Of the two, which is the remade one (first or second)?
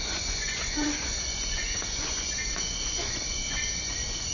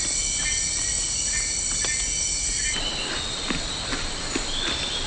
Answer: first